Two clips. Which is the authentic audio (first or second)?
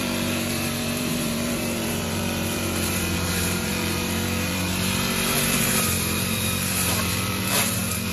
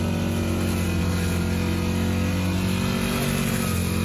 second